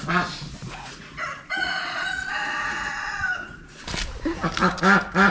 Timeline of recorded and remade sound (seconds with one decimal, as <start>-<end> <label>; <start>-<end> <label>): 0.0-0.6 recorded; 0.6-3.8 remade; 3.8-5.3 recorded